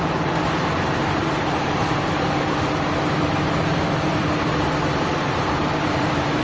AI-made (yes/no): yes